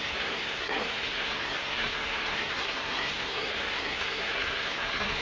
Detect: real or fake fake